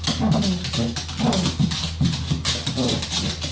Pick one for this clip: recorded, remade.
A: recorded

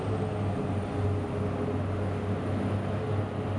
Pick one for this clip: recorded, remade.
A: recorded